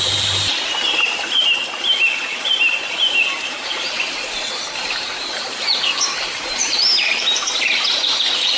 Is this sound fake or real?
fake